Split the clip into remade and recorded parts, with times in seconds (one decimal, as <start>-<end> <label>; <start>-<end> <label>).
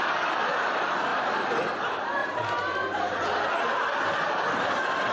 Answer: 0.0-5.1 remade